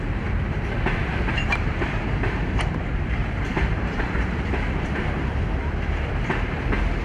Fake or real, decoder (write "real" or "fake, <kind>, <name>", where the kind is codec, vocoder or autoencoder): fake, vocoder, BigVGAN v2